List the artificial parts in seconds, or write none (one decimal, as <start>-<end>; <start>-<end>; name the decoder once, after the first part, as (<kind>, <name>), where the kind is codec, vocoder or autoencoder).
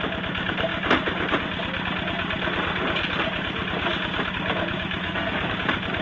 5.0-5.5 (codec, SNAC)